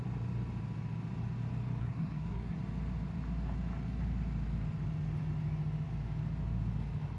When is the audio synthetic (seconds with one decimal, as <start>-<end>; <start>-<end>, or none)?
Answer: 1.8-2.6